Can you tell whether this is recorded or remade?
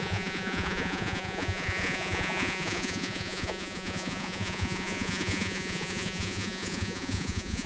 remade